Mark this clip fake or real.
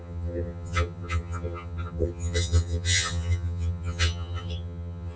fake